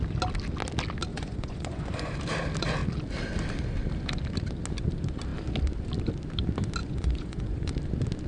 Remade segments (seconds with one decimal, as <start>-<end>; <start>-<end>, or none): 1.1-2.1; 6.8-7.7